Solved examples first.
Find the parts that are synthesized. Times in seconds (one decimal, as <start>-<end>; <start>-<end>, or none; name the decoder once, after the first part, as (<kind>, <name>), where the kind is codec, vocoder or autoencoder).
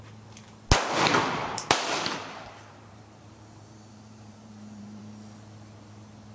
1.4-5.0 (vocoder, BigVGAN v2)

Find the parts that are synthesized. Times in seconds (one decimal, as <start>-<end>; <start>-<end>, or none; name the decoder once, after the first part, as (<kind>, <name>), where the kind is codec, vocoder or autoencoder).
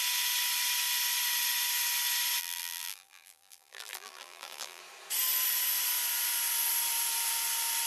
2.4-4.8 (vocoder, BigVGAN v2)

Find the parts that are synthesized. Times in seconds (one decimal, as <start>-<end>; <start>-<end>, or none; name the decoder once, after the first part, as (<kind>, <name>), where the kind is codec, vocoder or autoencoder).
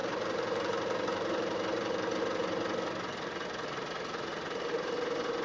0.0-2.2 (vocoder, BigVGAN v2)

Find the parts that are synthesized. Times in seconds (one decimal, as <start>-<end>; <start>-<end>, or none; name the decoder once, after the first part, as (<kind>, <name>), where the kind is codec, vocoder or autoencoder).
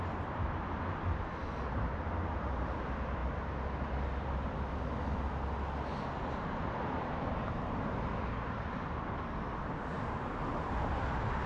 9.9-10.9 (vocoder, BigVGAN v2)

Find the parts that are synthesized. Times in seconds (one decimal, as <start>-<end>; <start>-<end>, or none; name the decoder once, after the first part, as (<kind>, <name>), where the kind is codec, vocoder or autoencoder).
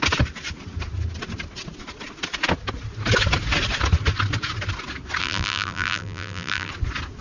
5.2-6.7 (vocoder, BigVGAN v2)